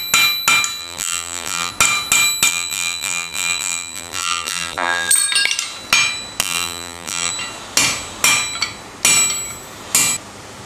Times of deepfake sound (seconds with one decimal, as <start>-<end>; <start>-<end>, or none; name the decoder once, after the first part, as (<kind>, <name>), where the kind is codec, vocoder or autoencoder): 0.8-1.7 (vocoder, BigVGAN v2); 2.5-5.1; 6.4-7.3